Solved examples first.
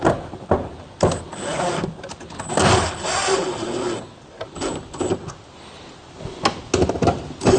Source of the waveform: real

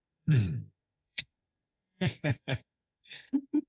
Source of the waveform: fake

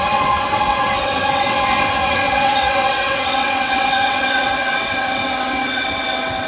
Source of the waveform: fake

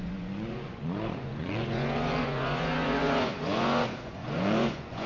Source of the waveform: fake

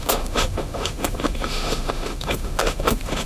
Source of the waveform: fake